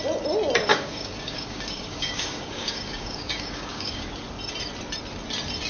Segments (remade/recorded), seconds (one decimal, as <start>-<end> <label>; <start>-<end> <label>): 0.0-0.7 recorded; 0.7-4.1 remade; 4.1-5.7 recorded